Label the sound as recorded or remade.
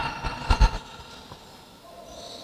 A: recorded